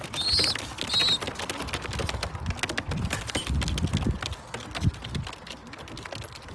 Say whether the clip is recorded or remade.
recorded